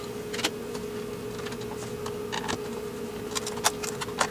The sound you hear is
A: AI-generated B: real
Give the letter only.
B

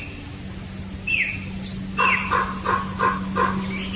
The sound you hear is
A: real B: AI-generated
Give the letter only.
A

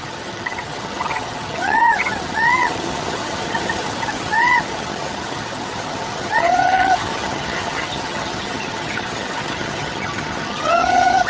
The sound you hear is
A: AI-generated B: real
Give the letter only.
A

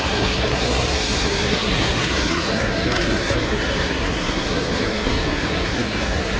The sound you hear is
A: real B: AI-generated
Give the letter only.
B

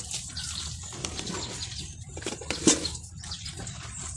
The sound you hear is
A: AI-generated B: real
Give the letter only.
B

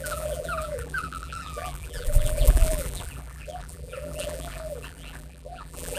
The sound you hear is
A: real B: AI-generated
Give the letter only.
B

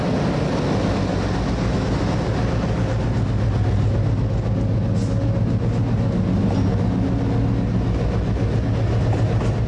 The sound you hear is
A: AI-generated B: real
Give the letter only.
B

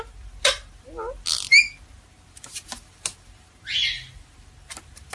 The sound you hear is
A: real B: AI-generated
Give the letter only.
A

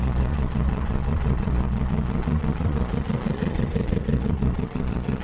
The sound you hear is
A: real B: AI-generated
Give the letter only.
B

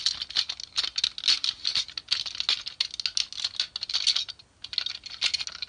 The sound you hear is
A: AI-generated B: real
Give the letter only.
B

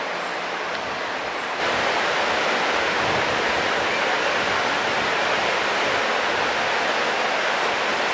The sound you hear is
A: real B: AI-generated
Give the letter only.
A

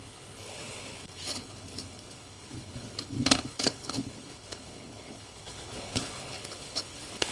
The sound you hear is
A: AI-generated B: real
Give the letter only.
A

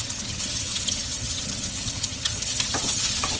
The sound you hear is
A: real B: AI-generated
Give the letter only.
B